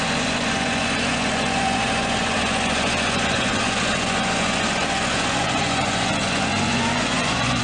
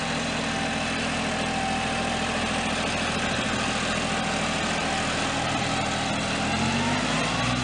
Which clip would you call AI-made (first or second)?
first